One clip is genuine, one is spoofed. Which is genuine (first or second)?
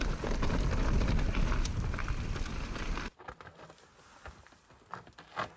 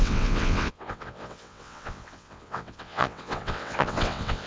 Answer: first